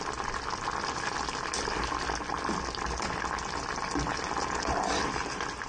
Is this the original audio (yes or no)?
yes